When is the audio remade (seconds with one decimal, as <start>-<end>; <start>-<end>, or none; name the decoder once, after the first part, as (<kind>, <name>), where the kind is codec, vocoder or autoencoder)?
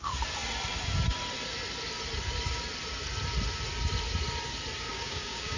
4.9-5.6 (codec, DAC)